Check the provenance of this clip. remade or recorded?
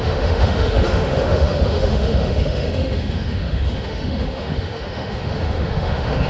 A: remade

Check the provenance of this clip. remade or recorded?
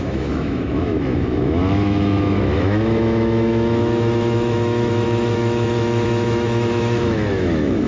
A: remade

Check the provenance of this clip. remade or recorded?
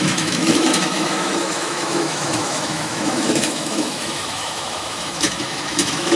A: remade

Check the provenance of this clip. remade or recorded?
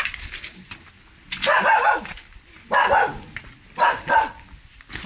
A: recorded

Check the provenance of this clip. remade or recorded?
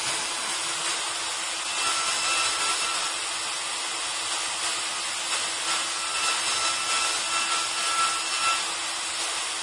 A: recorded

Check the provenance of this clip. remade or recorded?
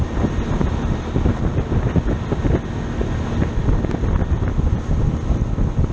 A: recorded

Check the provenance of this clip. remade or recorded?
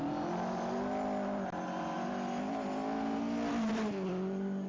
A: recorded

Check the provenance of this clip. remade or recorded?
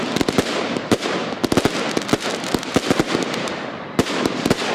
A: recorded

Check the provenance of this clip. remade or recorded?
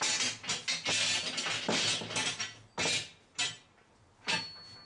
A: recorded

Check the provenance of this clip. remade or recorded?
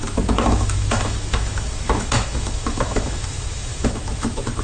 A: remade